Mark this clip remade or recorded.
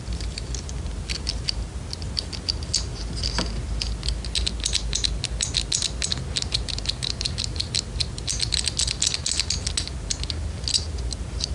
recorded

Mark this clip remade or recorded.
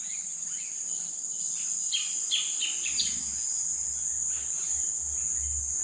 recorded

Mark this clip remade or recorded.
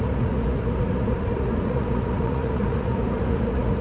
remade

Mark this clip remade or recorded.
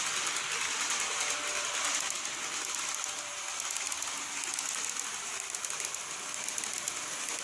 recorded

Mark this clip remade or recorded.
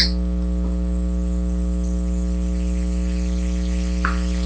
recorded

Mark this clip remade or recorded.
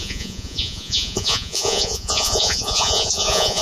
remade